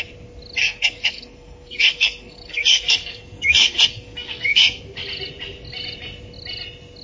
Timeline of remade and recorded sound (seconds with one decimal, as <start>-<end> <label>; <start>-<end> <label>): 0.0-0.6 recorded; 0.6-4.8 remade; 4.8-7.0 recorded